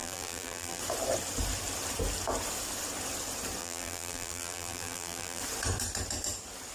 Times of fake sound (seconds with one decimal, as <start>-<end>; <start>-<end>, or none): 0.0-0.8; 3.6-5.4